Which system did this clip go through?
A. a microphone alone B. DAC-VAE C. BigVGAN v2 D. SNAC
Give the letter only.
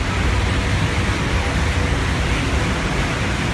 A